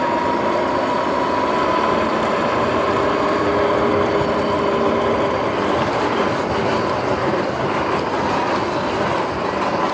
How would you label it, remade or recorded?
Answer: recorded